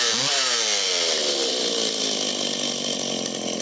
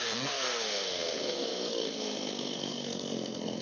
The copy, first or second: second